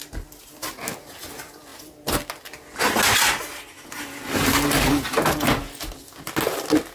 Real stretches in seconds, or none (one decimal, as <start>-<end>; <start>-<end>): 0.0-6.9